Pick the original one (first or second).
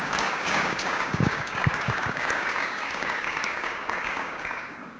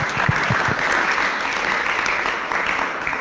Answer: second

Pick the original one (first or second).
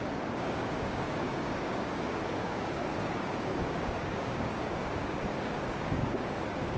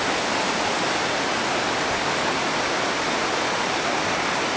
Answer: second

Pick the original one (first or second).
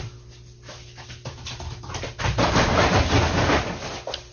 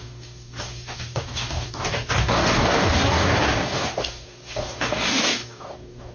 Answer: first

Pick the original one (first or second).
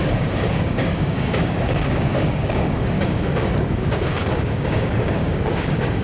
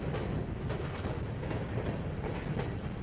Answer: second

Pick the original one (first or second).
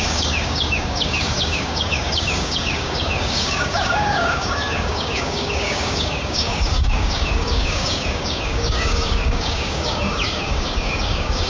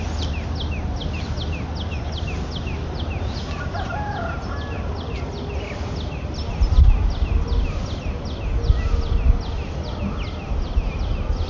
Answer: second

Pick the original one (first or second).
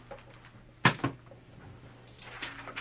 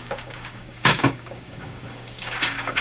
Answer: first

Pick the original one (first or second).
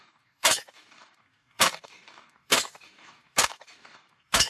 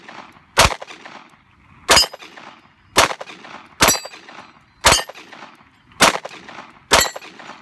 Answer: second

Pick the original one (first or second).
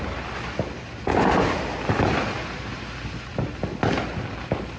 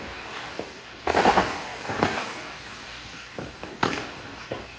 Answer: first